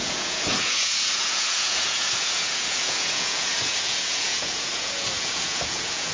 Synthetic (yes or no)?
yes